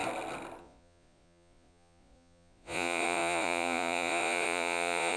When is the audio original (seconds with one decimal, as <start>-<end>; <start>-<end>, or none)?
0.0-0.6